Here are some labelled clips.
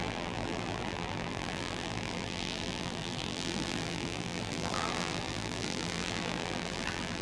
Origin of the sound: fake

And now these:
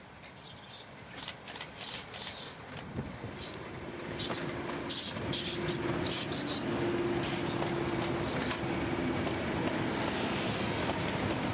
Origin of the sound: real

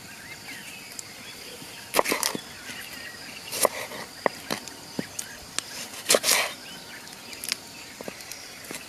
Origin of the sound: real